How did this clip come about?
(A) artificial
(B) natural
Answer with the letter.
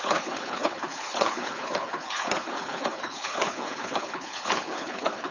A